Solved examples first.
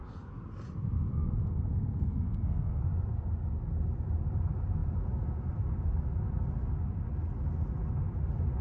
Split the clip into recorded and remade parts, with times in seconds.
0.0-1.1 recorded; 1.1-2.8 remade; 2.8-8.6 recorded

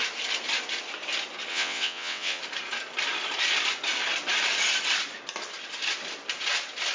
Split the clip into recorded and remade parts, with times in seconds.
0.0-1.5 recorded; 1.5-2.4 remade; 2.4-6.9 recorded

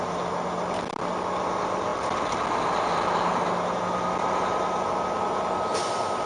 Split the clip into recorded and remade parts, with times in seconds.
0.0-6.3 recorded